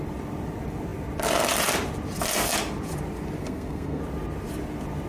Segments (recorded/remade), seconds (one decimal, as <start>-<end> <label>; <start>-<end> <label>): 0.0-3.4 recorded; 3.4-4.0 remade; 4.0-5.1 recorded